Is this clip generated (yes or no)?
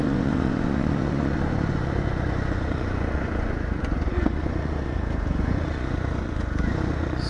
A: yes